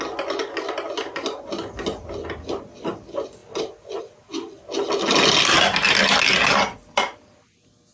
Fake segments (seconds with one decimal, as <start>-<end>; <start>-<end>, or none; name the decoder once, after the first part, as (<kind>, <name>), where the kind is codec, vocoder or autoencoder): none